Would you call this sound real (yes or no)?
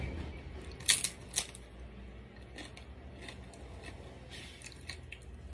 yes